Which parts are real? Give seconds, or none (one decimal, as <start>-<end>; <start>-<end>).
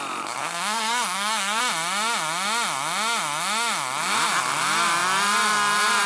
0.0-0.4; 1.6-6.1